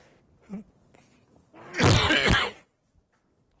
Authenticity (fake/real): real